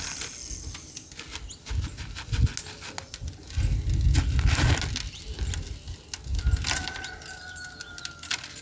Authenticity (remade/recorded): recorded